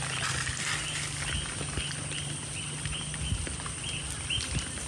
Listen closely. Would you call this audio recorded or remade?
recorded